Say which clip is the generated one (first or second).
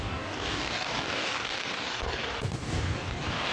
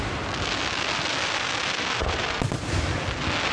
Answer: first